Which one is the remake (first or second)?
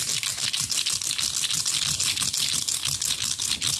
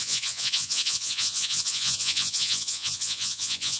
second